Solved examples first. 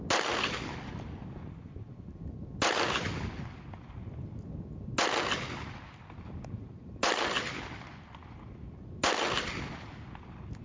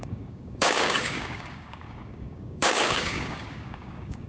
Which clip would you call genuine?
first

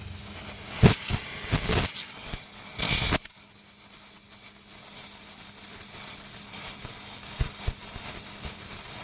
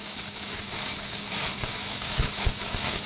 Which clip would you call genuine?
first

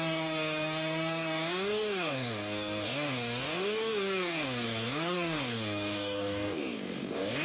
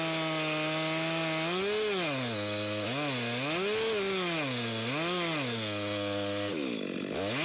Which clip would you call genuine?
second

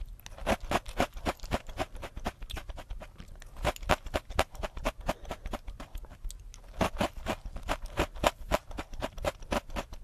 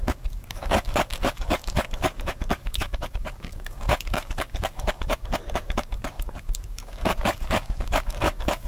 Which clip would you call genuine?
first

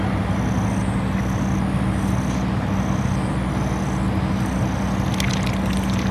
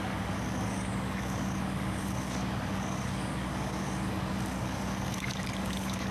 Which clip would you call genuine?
first